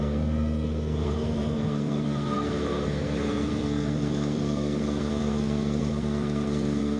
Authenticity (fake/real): fake